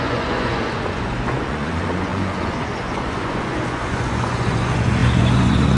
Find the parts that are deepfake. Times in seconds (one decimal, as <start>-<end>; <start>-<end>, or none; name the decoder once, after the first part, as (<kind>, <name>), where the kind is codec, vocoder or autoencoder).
0.0-5.8 (vocoder, Vocos)